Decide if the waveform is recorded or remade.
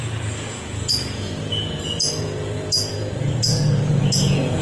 remade